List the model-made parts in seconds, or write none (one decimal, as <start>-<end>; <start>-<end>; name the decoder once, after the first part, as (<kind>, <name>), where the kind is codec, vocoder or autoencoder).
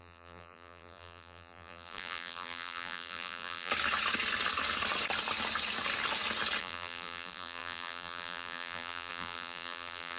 0.0-3.7 (vocoder, BigVGAN v2); 6.6-10.2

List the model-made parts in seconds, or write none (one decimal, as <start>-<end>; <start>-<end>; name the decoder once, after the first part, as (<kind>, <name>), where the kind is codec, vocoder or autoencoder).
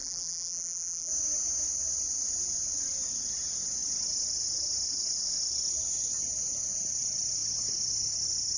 0.0-1.1 (vocoder, BigVGAN v2)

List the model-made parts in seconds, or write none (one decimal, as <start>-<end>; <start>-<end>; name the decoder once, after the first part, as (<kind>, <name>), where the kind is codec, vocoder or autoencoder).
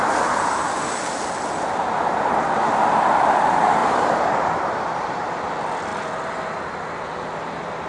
3.8-5.5 (vocoder, BigVGAN v2)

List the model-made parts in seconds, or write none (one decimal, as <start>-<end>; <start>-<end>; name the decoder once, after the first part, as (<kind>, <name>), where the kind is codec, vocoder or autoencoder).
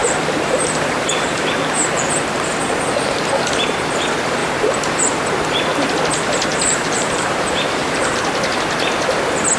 0.0-1.5 (vocoder, BigVGAN v2); 4.4-5.0; 6.5-8.2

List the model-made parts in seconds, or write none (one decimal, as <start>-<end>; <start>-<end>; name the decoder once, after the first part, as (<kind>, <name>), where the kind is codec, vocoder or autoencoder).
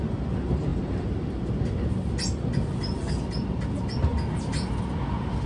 none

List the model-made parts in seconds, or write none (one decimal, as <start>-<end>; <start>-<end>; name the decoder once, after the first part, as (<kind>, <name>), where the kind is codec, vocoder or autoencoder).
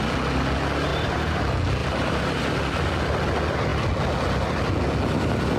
0.9-1.4 (vocoder, BigVGAN v2); 1.8-2.5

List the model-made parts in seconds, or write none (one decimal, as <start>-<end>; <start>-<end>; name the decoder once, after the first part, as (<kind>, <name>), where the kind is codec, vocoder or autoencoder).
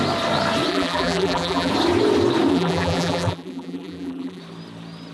0.7-1.7 (vocoder, BigVGAN v2); 2.5-4.4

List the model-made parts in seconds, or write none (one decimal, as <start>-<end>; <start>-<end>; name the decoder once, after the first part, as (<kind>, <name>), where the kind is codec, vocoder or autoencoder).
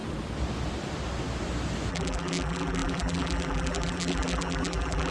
1.9-5.1 (vocoder, BigVGAN v2)